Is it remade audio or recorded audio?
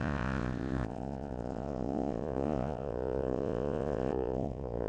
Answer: remade